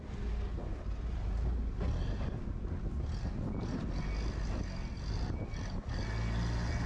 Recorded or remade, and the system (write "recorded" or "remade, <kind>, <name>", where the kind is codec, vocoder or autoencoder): recorded